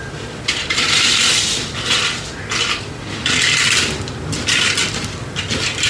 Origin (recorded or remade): recorded